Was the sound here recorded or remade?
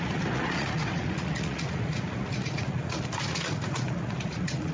remade